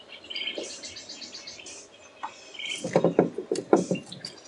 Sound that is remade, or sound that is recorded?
recorded